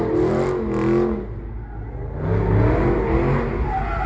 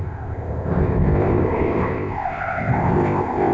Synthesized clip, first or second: second